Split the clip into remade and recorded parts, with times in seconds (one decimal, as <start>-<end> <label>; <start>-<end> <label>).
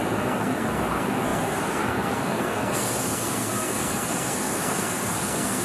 0.0-5.6 remade